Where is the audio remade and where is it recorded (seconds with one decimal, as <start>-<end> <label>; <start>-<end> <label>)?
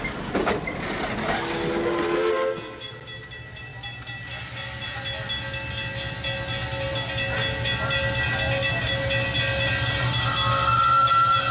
0.0-2.3 recorded; 2.3-2.9 remade; 2.9-11.5 recorded